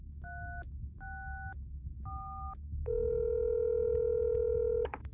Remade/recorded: remade